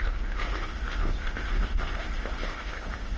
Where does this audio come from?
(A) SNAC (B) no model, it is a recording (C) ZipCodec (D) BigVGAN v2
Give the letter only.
C